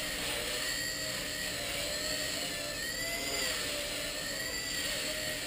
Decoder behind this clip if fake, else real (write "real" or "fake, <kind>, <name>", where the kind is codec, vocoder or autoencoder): real